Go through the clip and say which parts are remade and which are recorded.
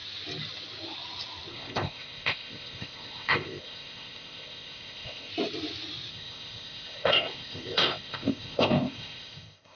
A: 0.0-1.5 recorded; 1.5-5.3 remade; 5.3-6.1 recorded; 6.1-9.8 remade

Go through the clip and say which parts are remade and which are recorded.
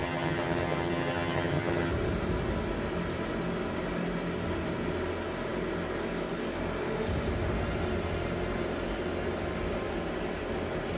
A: 0.0-1.9 remade; 1.9-11.0 recorded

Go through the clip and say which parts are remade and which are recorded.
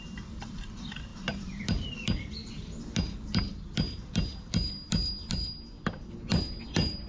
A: 0.0-1.1 remade; 1.1-1.6 recorded; 1.6-7.1 remade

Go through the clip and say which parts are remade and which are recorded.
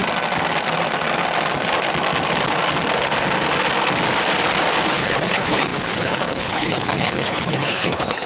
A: 0.0-4.9 recorded; 4.9-8.3 remade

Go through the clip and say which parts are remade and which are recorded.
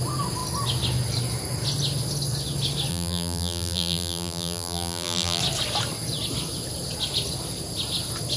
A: 0.0-2.9 recorded; 2.9-5.4 remade; 5.4-8.4 recorded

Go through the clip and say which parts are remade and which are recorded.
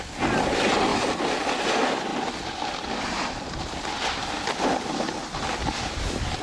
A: 0.0-6.4 recorded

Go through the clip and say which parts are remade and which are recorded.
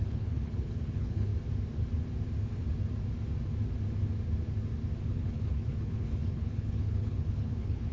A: 0.0-1.3 remade; 1.3-5.1 recorded; 5.1-7.9 remade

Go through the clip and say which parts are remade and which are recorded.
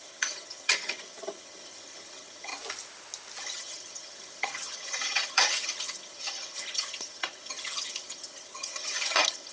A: 0.0-2.5 remade; 2.5-3.4 recorded; 3.4-9.5 remade